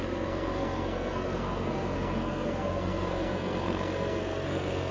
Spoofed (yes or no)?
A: yes